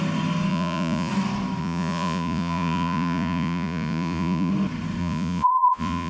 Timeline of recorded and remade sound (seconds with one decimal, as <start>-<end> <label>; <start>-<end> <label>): 0.0-0.5 recorded; 0.5-1.1 remade; 1.1-1.6 recorded; 1.6-4.5 remade; 4.5-5.0 recorded; 5.0-6.1 remade